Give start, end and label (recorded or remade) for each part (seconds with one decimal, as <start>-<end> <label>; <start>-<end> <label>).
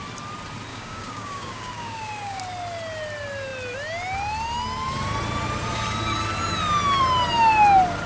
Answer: 0.0-0.7 recorded; 0.7-2.4 remade; 2.4-8.1 recorded